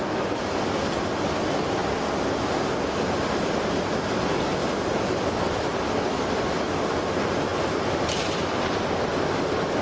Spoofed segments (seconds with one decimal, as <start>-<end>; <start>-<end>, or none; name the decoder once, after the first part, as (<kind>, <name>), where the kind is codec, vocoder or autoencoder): none